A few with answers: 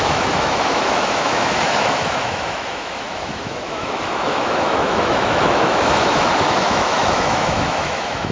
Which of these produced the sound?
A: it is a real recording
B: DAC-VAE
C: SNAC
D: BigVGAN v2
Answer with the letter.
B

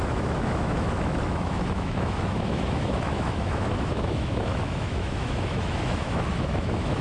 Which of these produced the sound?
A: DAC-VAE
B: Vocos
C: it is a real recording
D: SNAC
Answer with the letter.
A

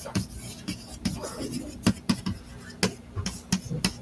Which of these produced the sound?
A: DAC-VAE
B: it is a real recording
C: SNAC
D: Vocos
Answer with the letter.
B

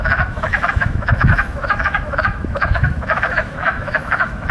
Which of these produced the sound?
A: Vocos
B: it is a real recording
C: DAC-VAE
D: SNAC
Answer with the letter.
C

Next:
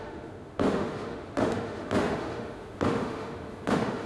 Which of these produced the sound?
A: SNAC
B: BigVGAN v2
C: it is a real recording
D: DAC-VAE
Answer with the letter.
D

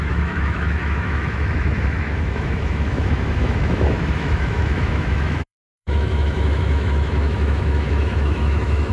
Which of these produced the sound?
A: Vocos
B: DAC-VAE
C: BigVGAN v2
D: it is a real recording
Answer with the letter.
B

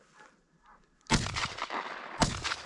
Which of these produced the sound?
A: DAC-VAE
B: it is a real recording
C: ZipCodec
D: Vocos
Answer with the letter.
B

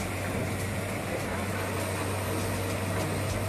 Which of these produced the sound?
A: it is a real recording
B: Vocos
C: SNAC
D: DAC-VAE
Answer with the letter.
A